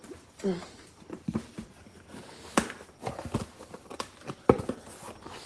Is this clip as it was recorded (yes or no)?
yes